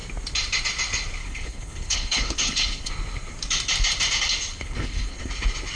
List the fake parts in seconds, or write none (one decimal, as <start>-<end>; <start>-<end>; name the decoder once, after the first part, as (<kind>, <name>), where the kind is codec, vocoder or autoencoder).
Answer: 1.2-2.9 (codec, HILCodec); 4.5-5.3